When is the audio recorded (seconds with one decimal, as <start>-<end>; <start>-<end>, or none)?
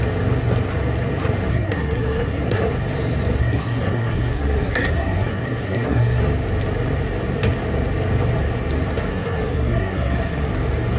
0.0-1.5; 2.7-3.4; 6.2-9.1; 10.5-11.0